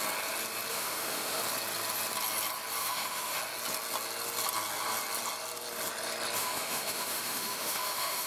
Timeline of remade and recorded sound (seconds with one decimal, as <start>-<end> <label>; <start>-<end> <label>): 0.0-0.7 recorded; 0.7-1.4 remade; 1.4-2.8 recorded; 2.8-3.4 remade; 3.4-6.4 recorded; 6.4-8.3 remade